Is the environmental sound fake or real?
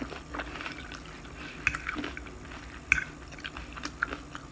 real